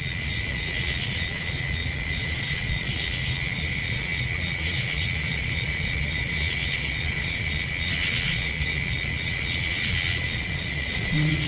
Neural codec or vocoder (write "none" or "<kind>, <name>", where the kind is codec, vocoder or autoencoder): vocoder, Vocos